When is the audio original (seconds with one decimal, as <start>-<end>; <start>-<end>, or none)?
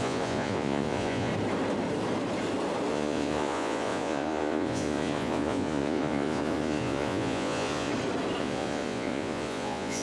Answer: 1.3-2.9; 7.9-8.4